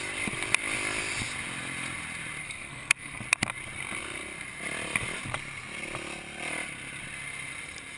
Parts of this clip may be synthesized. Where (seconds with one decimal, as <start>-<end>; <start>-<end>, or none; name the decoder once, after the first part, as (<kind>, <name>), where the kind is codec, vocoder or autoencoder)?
2.4-3.2 (codec, SNAC)